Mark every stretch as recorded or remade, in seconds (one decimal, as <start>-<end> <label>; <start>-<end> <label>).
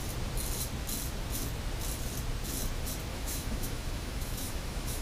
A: 0.0-3.1 recorded; 3.1-5.0 remade